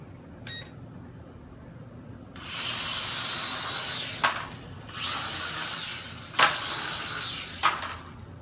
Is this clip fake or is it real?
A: real